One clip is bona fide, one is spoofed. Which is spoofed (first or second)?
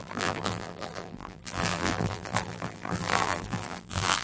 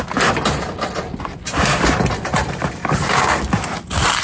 first